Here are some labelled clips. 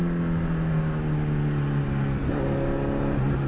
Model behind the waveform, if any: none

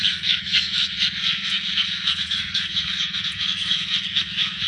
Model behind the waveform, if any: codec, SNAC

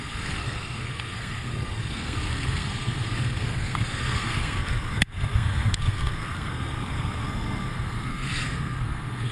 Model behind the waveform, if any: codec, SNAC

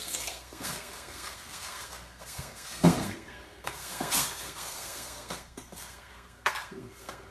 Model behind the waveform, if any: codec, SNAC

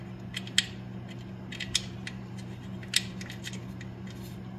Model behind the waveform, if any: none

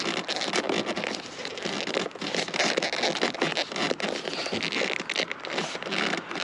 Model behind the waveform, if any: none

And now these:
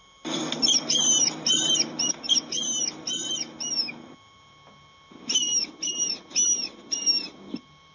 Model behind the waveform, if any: none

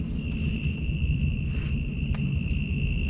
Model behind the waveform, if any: none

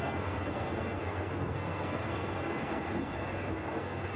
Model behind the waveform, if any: codec, SNAC